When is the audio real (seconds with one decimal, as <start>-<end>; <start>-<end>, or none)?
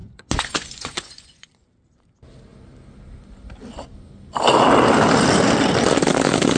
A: 1.7-6.6